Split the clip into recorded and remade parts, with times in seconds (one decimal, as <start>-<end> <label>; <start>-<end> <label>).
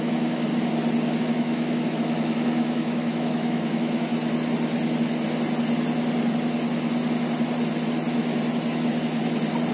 0.0-0.5 remade; 0.5-1.2 recorded; 1.2-4.1 remade; 4.1-9.7 recorded